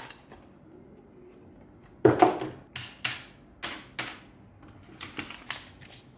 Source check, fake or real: real